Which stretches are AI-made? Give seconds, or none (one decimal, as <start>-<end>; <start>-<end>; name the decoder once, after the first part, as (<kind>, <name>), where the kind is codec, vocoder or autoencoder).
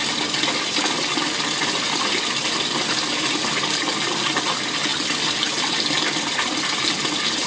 none